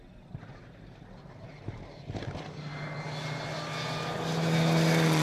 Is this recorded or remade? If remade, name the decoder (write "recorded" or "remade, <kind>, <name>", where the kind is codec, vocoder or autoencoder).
recorded